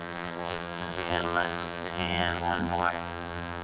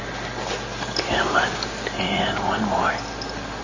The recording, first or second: second